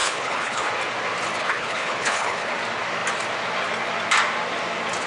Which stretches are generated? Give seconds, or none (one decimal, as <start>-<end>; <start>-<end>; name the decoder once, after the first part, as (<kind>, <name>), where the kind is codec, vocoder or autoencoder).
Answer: 0.0-0.7 (codec, HILCodec); 1.4-2.5